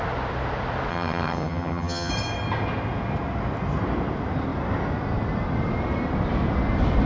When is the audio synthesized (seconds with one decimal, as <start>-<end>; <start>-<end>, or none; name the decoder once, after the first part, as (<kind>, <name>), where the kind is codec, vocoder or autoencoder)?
0.9-2.1 (vocoder, HiFi-GAN)